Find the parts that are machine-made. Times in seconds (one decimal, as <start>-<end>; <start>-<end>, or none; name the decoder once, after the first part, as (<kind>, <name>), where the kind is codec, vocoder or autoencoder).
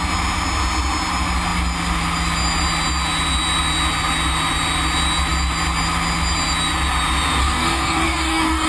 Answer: 7.4-8.7 (codec, DAC)